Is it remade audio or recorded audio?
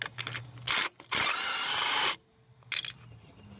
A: recorded